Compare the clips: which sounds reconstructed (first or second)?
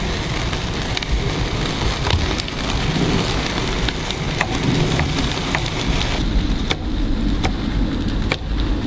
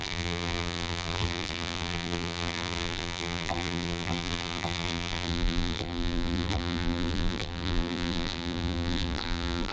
second